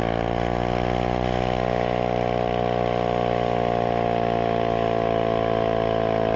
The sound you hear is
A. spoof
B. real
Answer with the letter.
B